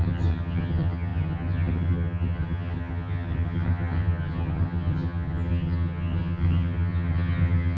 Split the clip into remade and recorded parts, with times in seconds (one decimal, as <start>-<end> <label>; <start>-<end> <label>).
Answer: 0.0-7.8 remade